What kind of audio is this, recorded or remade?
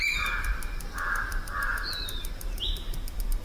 recorded